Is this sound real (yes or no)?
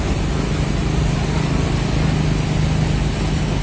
yes